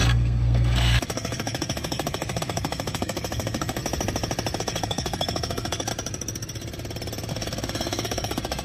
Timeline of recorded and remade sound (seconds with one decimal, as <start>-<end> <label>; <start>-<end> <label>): 0.0-3.8 remade; 3.8-4.6 recorded; 4.6-5.9 remade; 5.9-7.3 recorded; 7.3-8.6 remade